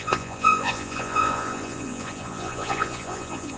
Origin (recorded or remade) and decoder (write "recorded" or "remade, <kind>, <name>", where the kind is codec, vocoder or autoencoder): remade, vocoder, Vocos